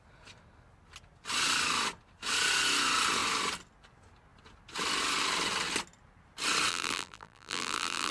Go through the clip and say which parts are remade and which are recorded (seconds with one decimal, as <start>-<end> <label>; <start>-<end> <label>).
0.0-6.7 recorded; 6.7-8.1 remade

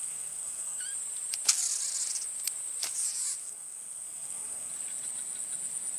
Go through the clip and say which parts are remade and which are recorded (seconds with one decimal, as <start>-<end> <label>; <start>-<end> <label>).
0.0-0.8 remade; 0.8-3.4 recorded; 3.4-4.7 remade; 4.7-6.0 recorded

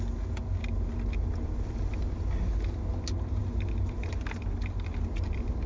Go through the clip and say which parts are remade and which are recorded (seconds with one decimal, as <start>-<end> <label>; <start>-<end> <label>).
0.0-5.7 recorded

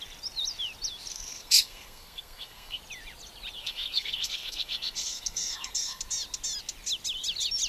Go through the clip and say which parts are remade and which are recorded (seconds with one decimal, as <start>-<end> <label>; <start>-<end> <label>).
0.0-1.1 recorded; 1.1-2.8 remade; 2.8-3.6 recorded; 3.6-6.0 remade; 6.0-7.7 recorded

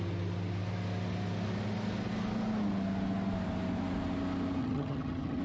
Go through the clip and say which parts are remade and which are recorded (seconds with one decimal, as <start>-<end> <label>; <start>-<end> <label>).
0.0-4.6 recorded; 4.6-5.4 remade

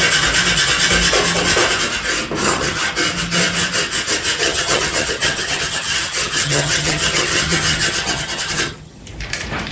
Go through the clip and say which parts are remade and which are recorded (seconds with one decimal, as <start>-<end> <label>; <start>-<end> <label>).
0.0-2.4 recorded; 2.4-2.9 remade; 2.9-4.4 recorded; 4.4-9.0 remade; 9.0-9.7 recorded